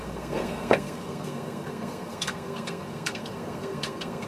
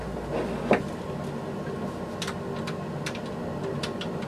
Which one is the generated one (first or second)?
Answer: first